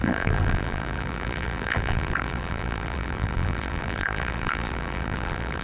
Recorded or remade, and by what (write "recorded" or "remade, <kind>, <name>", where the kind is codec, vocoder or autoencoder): remade, vocoder, BigVGAN v2